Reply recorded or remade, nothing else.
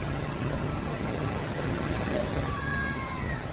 remade